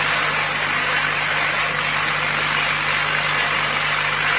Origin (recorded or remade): recorded